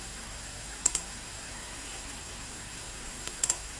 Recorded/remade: remade